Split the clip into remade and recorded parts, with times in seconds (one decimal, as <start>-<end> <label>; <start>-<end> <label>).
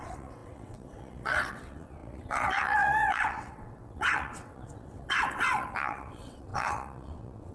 0.0-7.5 remade